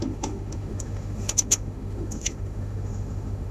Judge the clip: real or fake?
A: fake